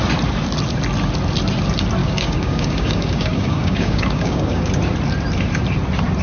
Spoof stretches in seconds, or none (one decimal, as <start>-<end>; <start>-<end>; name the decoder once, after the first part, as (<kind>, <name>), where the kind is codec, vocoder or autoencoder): 2.0-4.7 (codec, DAC)

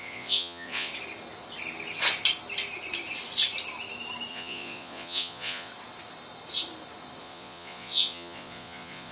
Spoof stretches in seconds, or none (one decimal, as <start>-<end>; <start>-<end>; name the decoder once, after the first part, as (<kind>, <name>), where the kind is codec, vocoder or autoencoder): 0.0-0.9 (vocoder, Vocos); 4.3-5.7; 7.2-9.1